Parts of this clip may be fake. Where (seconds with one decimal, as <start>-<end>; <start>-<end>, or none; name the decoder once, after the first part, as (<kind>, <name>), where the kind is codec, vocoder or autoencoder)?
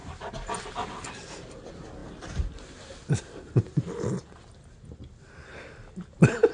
none